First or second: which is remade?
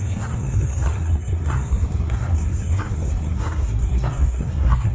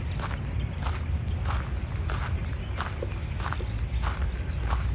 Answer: first